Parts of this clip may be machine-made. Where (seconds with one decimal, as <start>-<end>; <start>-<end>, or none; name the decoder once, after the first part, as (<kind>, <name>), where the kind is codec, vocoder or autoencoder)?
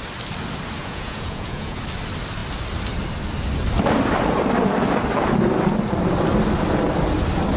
0.8-1.8 (vocoder, Vocos)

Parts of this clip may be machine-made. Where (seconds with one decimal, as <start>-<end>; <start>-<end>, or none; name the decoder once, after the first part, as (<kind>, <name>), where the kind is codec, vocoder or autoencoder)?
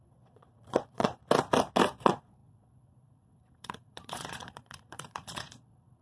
0.0-1.2 (vocoder, Vocos); 2.0-6.0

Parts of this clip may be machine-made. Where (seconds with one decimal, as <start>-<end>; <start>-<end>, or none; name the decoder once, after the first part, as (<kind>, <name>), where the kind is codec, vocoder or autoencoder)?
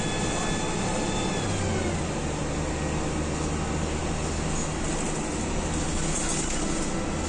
none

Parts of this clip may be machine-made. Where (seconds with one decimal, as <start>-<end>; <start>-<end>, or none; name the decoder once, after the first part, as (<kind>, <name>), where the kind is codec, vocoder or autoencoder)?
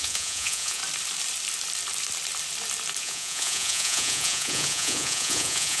0.0-0.8 (vocoder, Vocos); 3.0-5.8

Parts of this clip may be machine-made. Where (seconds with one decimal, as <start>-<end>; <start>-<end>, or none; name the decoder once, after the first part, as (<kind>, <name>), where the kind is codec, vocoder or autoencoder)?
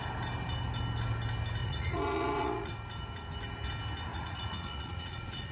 1.6-2.7 (vocoder, Vocos); 4.1-5.5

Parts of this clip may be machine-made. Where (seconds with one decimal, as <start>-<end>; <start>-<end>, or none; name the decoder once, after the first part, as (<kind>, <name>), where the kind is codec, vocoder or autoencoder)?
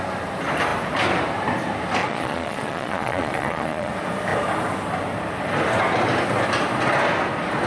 2.0-3.9 (vocoder, Vocos)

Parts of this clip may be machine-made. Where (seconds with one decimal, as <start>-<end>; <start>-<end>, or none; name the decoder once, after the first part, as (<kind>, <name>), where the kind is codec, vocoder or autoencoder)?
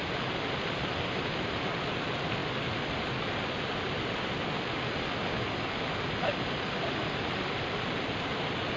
none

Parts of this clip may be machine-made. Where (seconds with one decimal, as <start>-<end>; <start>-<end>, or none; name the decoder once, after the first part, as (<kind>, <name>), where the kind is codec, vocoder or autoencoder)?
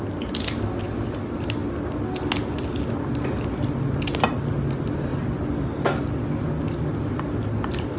none